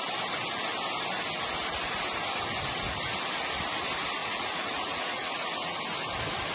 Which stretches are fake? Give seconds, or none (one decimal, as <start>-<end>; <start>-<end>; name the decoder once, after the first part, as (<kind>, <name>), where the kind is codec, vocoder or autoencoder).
4.2-5.8 (vocoder, Vocos)